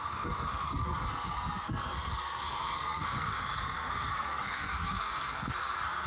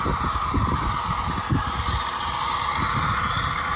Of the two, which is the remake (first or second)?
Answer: first